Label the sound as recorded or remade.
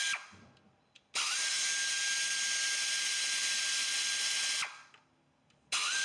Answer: recorded